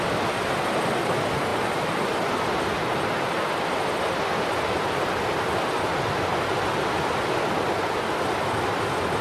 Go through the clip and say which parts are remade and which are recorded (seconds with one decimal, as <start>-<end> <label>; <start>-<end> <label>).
0.0-9.2 recorded

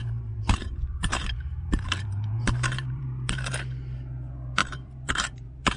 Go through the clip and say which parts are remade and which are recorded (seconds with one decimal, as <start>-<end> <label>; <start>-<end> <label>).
0.0-3.5 remade; 3.5-4.6 recorded; 4.6-5.8 remade